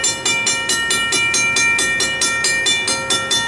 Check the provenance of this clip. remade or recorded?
recorded